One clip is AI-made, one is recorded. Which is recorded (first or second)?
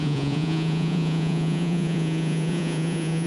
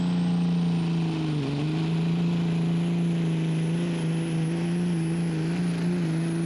second